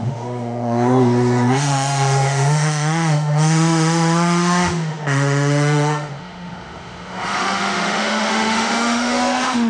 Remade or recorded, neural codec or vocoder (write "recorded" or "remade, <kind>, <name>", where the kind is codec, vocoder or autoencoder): remade, autoencoder, DAC-VAE